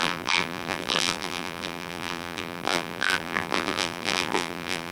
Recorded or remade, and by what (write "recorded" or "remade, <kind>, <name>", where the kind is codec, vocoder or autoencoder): remade, vocoder, BigVGAN v2